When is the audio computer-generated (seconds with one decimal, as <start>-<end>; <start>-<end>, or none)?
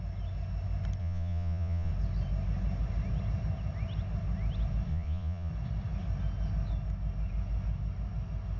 1.0-1.9; 4.9-5.5